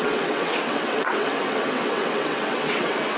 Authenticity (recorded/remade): remade